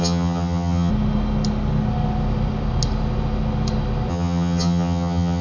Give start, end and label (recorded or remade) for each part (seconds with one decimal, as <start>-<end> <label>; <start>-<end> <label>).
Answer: 0.0-0.9 remade; 0.9-4.1 recorded; 4.1-5.4 remade